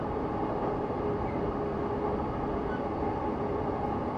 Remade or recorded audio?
recorded